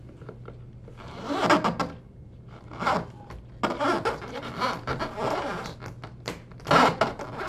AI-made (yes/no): no